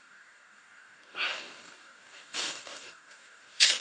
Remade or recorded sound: remade